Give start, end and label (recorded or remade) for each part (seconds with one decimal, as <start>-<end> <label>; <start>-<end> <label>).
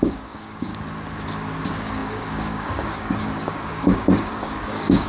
0.0-0.7 remade; 0.7-1.6 recorded; 1.6-5.1 remade